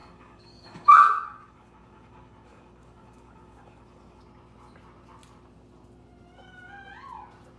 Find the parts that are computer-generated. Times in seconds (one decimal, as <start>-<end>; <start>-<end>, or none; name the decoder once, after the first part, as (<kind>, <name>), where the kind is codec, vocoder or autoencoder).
0.0-4.2 (codec, DAC)